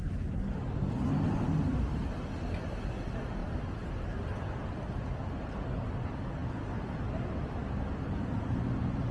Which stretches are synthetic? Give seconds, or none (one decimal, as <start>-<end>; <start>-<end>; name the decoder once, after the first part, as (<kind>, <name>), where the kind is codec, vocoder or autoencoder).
none